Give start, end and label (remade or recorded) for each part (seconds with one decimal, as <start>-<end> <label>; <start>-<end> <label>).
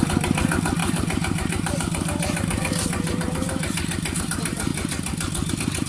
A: 0.0-0.8 recorded; 0.8-4.2 remade; 4.2-5.9 recorded